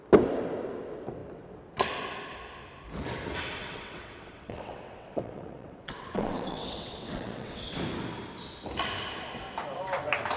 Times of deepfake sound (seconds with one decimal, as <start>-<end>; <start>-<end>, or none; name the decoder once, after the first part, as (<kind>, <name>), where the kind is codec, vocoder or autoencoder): 3.6-7.8 (vocoder, WaveNeXt)